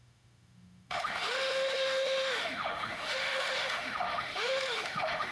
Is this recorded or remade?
remade